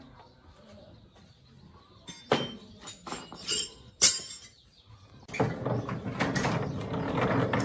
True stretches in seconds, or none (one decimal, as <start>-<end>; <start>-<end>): 0.0-3.4; 3.9-7.6